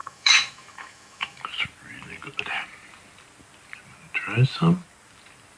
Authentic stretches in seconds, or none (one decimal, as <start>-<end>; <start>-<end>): 1.4-5.6